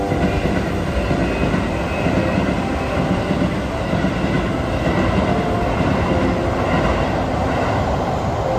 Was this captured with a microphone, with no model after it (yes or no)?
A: yes